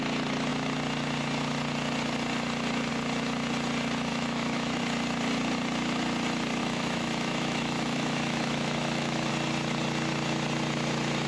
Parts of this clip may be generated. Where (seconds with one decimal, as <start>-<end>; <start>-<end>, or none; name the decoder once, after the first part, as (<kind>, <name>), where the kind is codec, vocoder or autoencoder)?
4.1-4.8 (autoencoder, DAC-VAE); 6.6-9.3